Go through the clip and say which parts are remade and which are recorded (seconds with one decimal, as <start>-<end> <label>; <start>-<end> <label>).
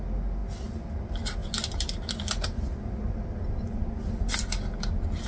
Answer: 0.0-5.3 recorded